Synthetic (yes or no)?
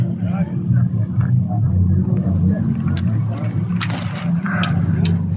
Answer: no